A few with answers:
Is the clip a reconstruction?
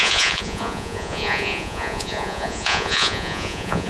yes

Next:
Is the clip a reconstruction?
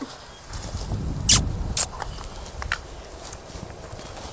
no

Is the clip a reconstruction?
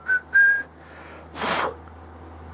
no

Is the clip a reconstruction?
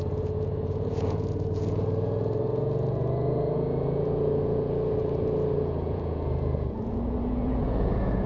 yes